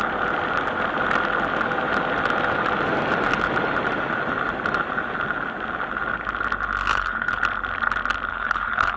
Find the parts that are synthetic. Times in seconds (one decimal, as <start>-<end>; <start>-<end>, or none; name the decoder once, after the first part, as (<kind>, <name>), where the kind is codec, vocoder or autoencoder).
6.9-7.4 (codec, HILCodec); 8.3-9.0